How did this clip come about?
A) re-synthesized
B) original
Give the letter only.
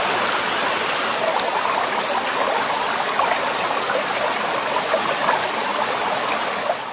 B